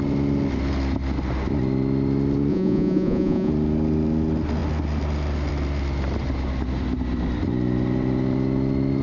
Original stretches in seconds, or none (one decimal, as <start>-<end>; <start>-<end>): 0.0-2.5; 3.5-9.0

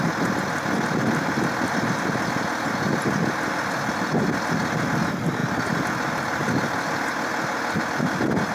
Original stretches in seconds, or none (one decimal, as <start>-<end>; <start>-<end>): 0.0-8.5

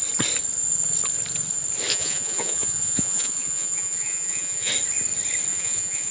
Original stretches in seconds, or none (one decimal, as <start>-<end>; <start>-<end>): 0.0-1.9; 4.7-5.5